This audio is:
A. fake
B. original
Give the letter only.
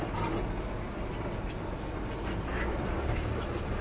B